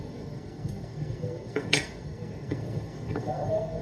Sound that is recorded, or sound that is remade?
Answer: remade